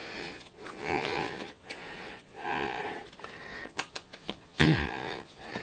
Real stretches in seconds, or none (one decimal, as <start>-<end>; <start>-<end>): 2.8-3.5